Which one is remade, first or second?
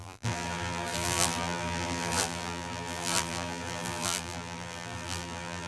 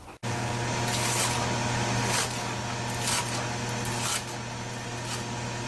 first